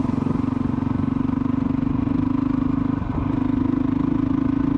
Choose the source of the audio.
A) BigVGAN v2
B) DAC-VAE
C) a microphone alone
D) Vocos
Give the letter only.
C